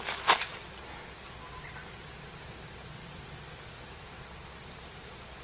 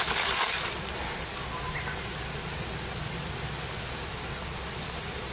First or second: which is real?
first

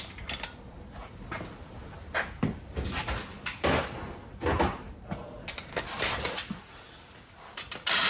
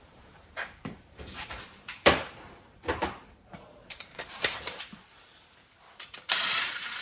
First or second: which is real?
first